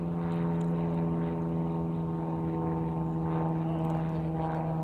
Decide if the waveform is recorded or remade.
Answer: recorded